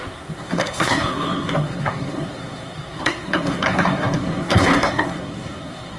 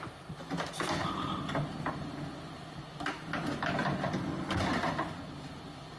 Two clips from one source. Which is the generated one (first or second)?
first